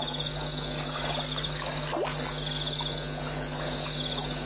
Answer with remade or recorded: recorded